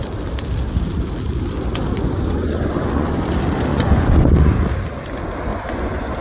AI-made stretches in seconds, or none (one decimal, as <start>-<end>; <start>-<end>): 1.9-3.3; 3.7-4.5; 5.5-6.2